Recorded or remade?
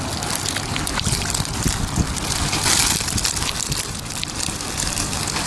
recorded